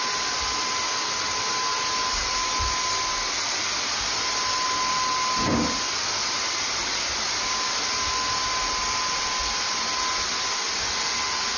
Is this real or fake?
real